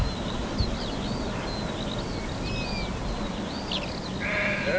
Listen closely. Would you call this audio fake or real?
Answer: real